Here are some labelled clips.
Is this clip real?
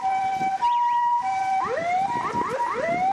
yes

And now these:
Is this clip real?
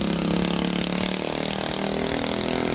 yes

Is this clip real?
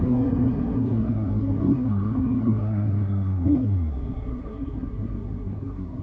no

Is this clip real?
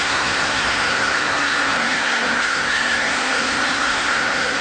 no